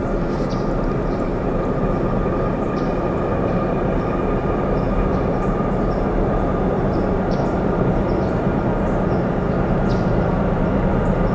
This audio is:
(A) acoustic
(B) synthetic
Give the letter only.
B